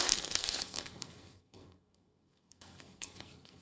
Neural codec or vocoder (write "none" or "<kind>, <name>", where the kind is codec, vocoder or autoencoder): codec, SNAC